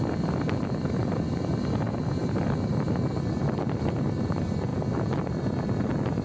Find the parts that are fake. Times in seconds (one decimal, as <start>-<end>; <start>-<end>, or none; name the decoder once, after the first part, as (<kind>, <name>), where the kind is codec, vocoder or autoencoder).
none